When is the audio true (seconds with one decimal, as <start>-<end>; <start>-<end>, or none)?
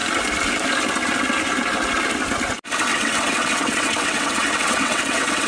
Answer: 0.0-2.9